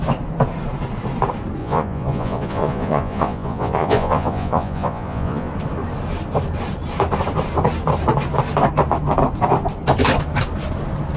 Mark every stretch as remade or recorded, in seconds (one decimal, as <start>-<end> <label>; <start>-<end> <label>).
0.0-1.6 recorded; 1.6-5.5 remade; 5.5-11.2 recorded